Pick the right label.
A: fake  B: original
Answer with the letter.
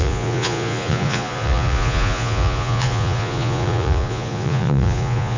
A